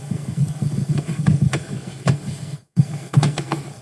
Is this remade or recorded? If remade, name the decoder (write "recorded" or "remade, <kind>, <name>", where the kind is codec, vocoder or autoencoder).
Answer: remade, codec, SNAC